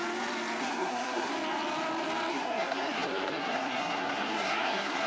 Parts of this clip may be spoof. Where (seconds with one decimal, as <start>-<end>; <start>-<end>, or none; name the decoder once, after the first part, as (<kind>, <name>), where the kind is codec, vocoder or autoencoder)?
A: 0.6-1.3 (codec, SNAC); 2.3-5.1